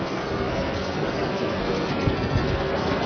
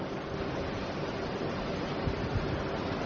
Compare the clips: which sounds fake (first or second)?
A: first